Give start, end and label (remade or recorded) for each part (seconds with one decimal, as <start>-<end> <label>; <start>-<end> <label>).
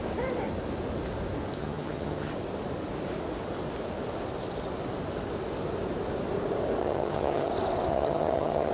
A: 0.0-1.6 recorded; 1.6-2.3 remade; 2.3-6.8 recorded; 6.8-7.5 remade; 7.5-7.9 recorded; 7.9-8.7 remade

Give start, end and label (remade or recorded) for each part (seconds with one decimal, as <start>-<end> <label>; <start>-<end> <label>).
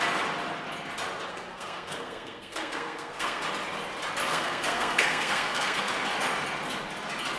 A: 0.0-1.3 recorded; 1.3-3.4 remade; 3.4-4.3 recorded; 4.3-5.9 remade; 5.9-7.4 recorded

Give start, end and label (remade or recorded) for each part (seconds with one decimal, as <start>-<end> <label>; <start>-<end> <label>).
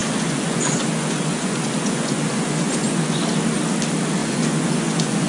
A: 0.0-3.2 remade; 3.2-4.2 recorded; 4.2-5.3 remade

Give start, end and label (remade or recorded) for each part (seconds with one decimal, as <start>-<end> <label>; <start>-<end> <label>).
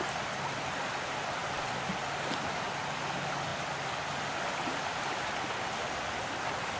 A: 0.0-1.4 recorded; 1.4-1.9 remade; 1.9-6.8 recorded